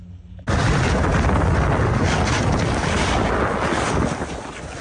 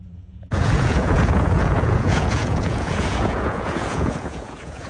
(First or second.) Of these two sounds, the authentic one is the first